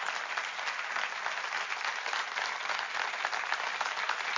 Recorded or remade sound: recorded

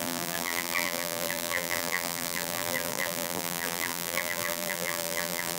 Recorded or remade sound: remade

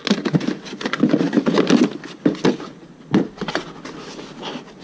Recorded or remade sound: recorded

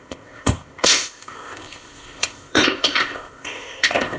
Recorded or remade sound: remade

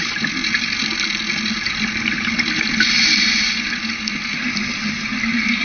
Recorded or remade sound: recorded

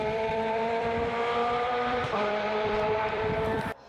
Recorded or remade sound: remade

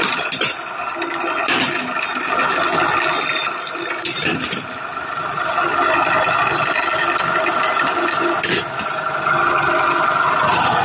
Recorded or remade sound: recorded